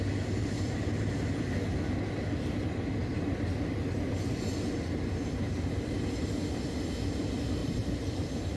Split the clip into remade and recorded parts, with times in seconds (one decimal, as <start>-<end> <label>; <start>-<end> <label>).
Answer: 0.0-0.4 recorded; 0.4-1.3 remade; 1.3-7.6 recorded; 7.6-8.6 remade